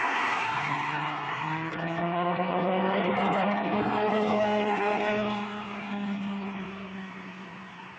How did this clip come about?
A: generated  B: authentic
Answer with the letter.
A